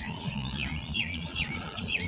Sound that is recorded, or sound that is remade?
remade